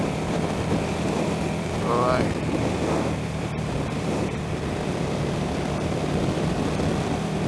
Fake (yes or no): yes